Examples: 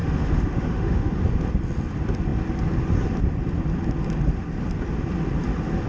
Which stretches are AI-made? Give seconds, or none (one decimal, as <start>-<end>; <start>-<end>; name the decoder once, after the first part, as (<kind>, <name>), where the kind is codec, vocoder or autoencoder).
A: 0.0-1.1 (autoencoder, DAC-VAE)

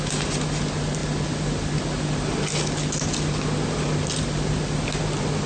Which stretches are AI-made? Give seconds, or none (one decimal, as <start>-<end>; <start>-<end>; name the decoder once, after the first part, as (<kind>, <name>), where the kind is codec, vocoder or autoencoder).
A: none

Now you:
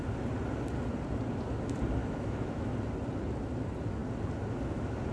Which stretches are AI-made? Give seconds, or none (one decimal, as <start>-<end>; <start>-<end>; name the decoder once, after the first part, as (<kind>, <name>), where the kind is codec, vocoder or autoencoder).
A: 2.0-2.7 (autoencoder, DAC-VAE)

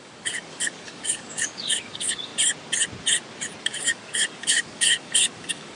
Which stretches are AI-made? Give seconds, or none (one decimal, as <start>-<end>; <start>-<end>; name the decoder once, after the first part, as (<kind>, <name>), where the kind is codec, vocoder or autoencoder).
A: 0.0-2.3 (codec, DAC); 3.6-5.8